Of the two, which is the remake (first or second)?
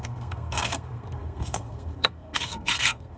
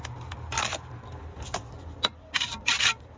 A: first